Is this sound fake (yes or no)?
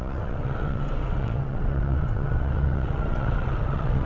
yes